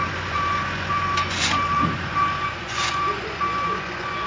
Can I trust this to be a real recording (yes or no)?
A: no